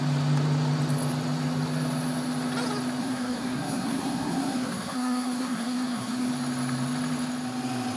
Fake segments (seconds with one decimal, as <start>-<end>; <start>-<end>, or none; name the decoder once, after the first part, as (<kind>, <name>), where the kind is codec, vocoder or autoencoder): 3.0-6.3 (codec, SNAC)